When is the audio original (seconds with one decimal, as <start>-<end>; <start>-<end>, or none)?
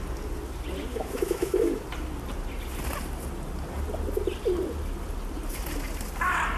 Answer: 0.0-0.9; 1.8-6.6